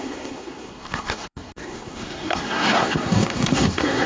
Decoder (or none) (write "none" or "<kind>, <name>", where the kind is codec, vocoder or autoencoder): codec, SNAC